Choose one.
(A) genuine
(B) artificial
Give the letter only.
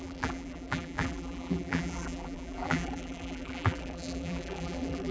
B